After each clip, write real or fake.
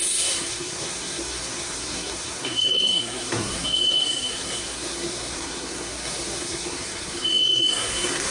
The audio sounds fake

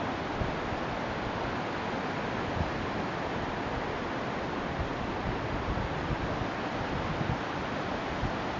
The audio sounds real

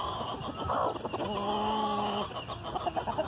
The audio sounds real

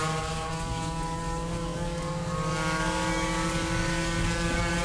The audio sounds fake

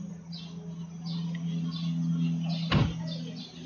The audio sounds real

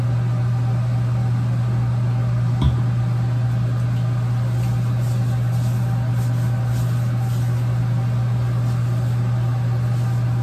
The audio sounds real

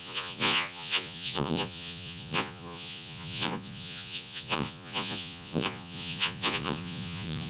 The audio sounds fake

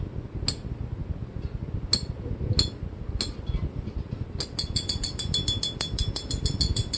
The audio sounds real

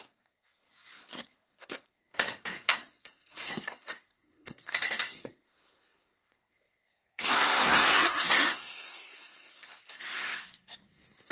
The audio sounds fake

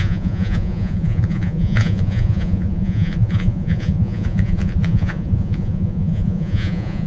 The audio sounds fake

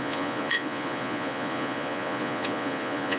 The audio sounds fake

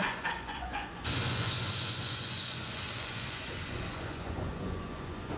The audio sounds fake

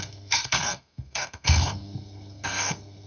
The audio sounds fake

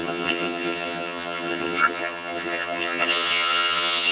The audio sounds fake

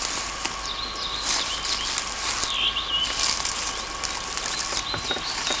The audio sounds real